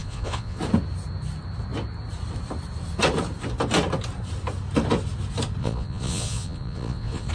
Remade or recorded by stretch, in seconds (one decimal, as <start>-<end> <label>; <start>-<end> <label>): 0.0-0.6 remade; 0.6-5.6 recorded; 5.6-7.3 remade